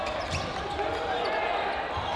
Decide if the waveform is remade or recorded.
recorded